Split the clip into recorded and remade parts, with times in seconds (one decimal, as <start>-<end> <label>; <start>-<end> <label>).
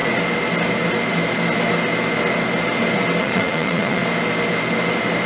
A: 0.0-3.2 recorded; 3.2-4.0 remade; 4.0-5.3 recorded